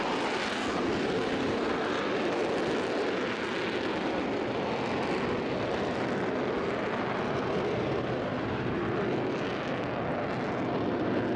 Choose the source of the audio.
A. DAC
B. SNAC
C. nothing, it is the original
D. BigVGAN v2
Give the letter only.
C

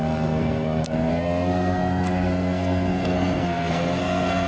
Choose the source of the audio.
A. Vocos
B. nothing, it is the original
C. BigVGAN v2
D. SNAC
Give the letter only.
D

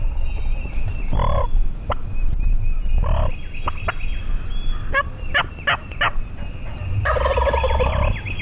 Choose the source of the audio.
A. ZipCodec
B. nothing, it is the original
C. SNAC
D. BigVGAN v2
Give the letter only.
B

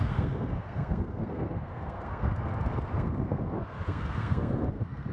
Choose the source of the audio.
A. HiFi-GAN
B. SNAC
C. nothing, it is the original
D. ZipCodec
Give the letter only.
B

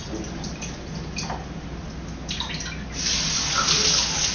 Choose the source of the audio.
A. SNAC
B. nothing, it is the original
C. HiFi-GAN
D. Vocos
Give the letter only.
B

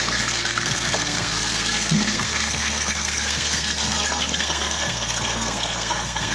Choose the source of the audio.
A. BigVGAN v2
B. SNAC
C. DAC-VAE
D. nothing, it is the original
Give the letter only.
B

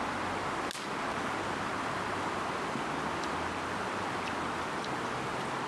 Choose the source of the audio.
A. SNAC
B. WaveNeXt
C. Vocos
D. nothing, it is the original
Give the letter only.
D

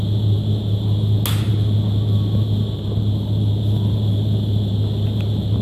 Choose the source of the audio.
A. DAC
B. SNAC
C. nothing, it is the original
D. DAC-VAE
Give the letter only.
C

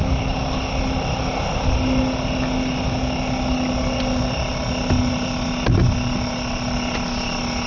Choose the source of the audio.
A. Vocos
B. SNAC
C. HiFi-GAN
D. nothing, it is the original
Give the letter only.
D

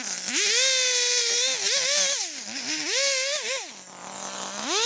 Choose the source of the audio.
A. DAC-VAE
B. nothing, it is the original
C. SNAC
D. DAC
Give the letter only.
B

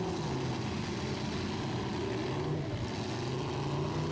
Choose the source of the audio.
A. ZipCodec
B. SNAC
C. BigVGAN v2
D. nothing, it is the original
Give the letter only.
D